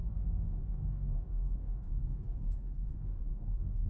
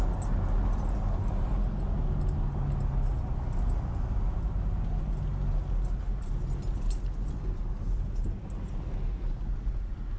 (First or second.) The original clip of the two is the second